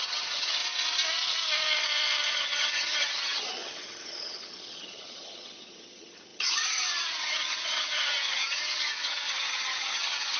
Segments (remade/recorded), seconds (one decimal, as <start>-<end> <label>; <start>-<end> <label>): 0.0-0.6 remade; 0.6-2.3 recorded; 2.3-10.4 remade